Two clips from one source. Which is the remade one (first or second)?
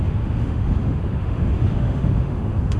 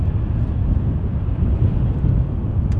first